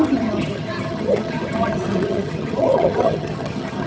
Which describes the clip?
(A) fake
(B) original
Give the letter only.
A